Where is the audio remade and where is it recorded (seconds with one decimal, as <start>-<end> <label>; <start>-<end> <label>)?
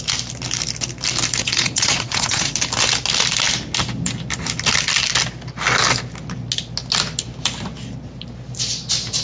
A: 0.0-1.4 recorded; 1.4-2.5 remade; 2.5-9.2 recorded